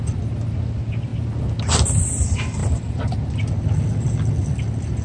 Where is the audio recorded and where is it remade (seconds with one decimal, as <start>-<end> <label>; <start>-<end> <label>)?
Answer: 0.0-5.0 recorded